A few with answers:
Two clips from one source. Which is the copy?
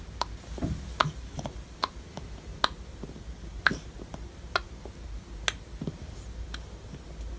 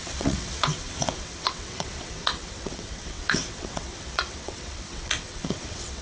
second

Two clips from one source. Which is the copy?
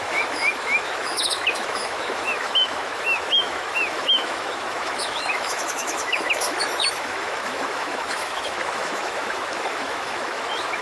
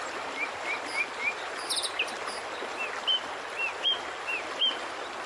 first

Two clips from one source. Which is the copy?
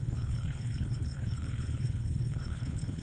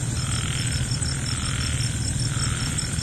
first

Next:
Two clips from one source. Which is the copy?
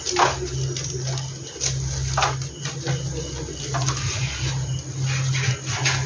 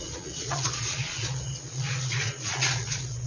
second